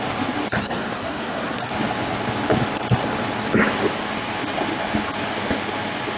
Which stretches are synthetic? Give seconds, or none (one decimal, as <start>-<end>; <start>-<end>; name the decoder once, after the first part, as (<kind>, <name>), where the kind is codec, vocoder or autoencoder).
0.6-1.7 (codec, SNAC)

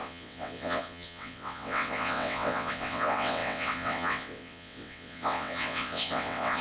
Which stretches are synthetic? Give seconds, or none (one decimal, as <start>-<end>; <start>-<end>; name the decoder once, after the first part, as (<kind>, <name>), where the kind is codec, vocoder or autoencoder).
0.0-6.6 (vocoder, WaveNeXt)

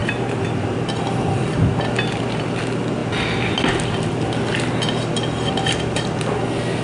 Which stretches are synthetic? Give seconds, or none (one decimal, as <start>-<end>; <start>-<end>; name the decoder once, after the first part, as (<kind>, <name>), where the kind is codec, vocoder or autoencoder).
none

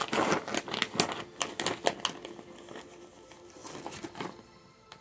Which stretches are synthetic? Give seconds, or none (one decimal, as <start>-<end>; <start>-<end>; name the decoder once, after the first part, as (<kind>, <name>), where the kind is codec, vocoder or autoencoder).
none

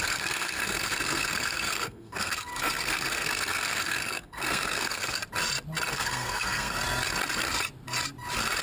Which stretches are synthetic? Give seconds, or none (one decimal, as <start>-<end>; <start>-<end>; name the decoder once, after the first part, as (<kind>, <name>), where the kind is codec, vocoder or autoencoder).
0.0-5.2 (codec, SNAC); 5.9-6.8

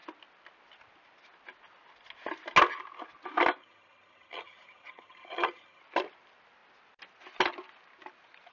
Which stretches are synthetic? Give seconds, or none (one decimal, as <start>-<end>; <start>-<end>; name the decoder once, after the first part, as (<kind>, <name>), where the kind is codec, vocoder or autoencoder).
3.6-5.8 (vocoder, HiFi-GAN)